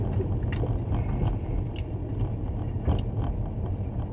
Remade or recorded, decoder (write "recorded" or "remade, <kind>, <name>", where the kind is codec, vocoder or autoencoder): recorded